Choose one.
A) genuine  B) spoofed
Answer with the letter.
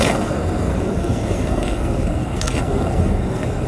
B